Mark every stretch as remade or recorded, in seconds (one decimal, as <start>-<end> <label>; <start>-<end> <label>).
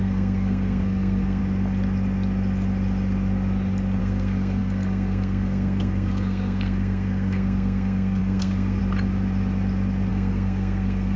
0.0-1.4 remade; 1.4-4.0 recorded; 4.0-8.8 remade; 8.8-10.1 recorded; 10.1-11.2 remade